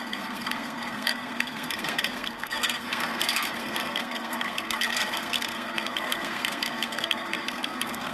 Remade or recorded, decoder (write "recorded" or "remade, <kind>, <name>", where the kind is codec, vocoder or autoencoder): remade, codec, SNAC